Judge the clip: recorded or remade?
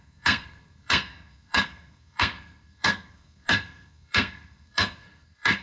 remade